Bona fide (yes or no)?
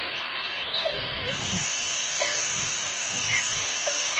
no